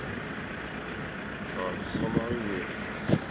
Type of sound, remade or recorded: recorded